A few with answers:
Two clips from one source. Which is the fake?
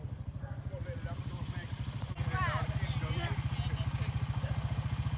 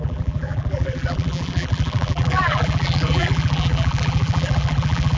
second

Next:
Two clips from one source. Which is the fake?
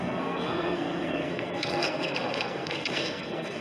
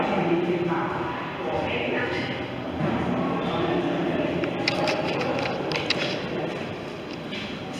first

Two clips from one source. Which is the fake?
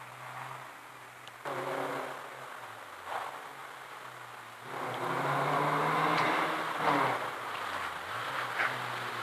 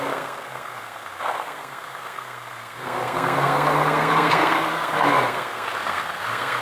second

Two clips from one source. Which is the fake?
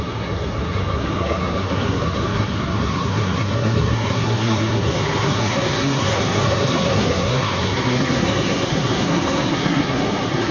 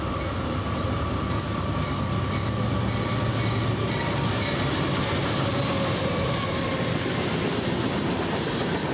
first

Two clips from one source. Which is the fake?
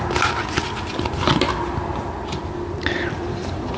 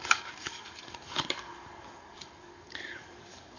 second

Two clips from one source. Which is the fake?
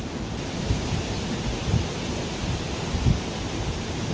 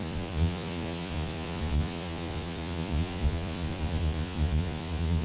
second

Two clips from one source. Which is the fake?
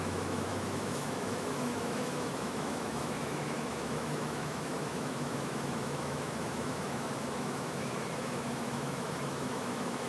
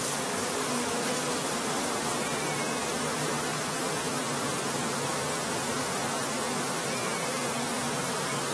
first